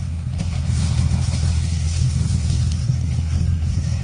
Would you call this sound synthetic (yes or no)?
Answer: yes